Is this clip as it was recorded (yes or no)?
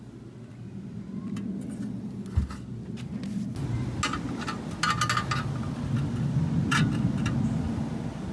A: yes